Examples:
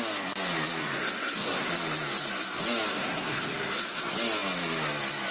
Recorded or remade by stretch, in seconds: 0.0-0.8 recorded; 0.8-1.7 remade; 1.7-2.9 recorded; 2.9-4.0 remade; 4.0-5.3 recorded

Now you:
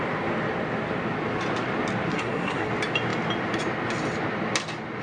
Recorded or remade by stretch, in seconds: 0.0-2.1 recorded; 2.1-2.7 remade; 2.7-5.0 recorded

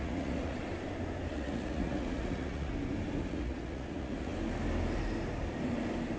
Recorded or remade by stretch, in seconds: 0.0-0.6 remade; 0.6-1.3 recorded; 1.3-2.7 remade; 2.7-3.2 recorded; 3.2-4.3 remade; 4.3-6.2 recorded

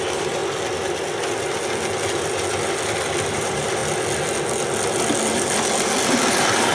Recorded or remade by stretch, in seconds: 0.0-0.4 remade; 0.4-3.3 recorded; 3.3-3.8 remade; 3.8-6.3 recorded; 6.3-6.7 remade

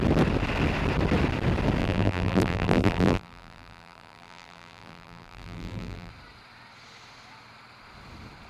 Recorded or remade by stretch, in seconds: 0.0-1.8 recorded; 1.8-6.1 remade; 6.1-8.5 recorded